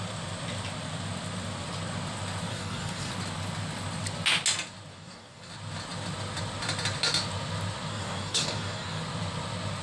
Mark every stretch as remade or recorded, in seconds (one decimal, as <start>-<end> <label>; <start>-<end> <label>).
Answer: 0.0-2.5 recorded; 2.5-3.1 remade; 3.1-4.9 recorded; 4.9-5.5 remade; 5.5-7.9 recorded; 7.9-9.0 remade; 9.0-9.8 recorded